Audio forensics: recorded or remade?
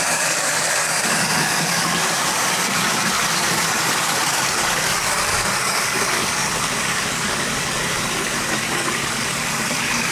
remade